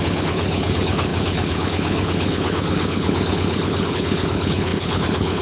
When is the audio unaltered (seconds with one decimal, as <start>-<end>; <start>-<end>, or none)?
none